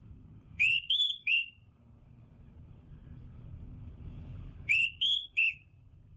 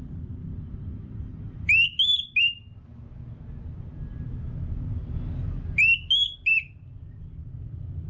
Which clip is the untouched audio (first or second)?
second